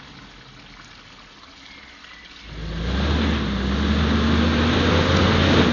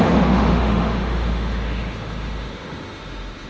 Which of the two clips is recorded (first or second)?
first